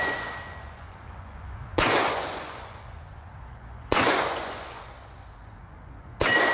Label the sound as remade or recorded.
remade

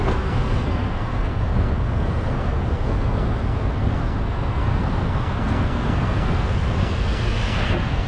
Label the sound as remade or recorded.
remade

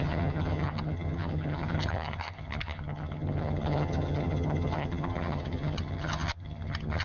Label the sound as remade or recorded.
remade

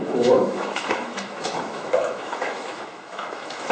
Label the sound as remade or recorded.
remade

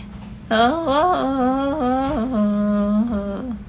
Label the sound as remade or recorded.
recorded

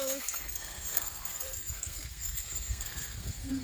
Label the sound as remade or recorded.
remade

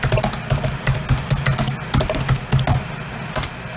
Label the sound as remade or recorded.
recorded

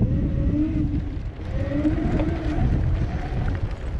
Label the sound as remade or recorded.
recorded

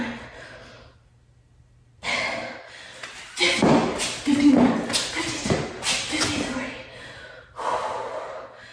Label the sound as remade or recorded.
recorded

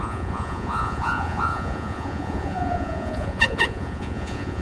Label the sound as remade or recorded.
remade